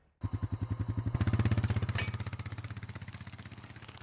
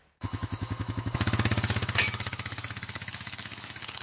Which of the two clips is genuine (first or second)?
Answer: first